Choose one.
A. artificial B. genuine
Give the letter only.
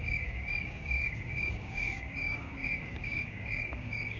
A